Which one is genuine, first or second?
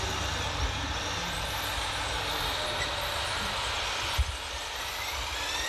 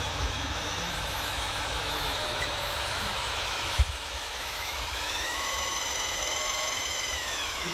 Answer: first